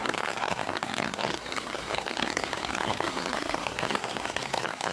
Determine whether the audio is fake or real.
fake